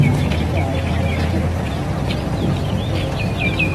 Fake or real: real